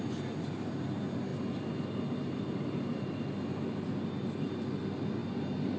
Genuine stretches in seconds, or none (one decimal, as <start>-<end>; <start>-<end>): 0.0-5.8